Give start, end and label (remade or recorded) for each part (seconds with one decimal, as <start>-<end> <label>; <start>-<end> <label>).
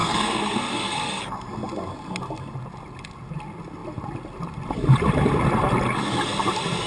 0.0-1.2 remade; 1.2-6.9 recorded